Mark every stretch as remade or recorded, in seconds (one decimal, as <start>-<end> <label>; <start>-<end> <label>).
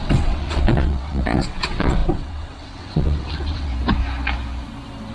0.0-3.7 remade; 3.7-5.1 recorded